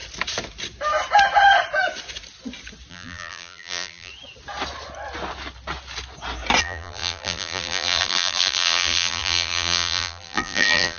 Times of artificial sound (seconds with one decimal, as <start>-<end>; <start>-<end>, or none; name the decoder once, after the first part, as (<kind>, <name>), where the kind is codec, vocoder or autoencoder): 2.9-4.1 (vocoder, BigVGAN v2); 6.6-11.0